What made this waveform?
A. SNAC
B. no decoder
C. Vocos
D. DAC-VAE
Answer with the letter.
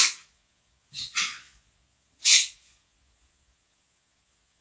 C